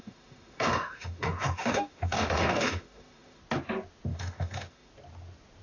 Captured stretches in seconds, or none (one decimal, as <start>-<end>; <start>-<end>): 3.4-4.1; 4.9-5.6